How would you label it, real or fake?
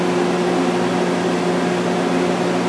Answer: real